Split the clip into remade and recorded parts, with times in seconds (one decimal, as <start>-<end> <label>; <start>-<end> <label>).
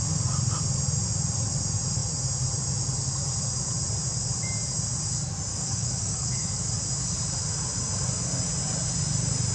0.0-5.5 recorded; 5.5-6.7 remade; 6.7-9.5 recorded